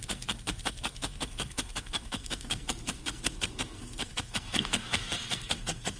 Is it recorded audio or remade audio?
remade